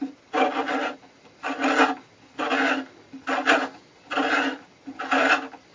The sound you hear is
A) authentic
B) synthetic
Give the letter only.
A